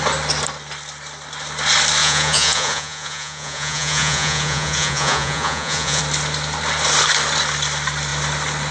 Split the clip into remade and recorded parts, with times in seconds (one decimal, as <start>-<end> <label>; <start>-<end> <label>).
0.0-2.0 recorded; 2.0-6.0 remade; 6.0-8.7 recorded